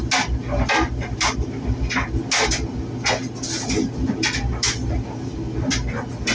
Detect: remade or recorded recorded